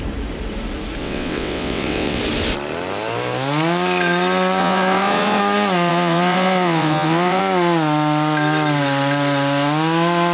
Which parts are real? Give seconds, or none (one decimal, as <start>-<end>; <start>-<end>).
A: 0.0-1.0; 2.2-4.6; 5.4-5.9; 7.4-10.3